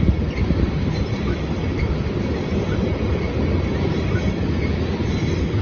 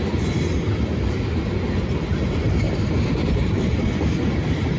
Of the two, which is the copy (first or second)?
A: first